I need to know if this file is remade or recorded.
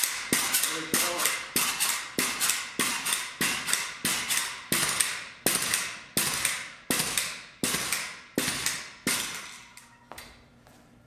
recorded